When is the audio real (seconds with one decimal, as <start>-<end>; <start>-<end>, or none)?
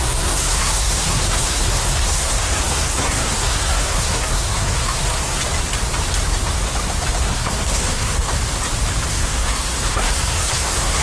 5.4-7.2; 8.4-9.1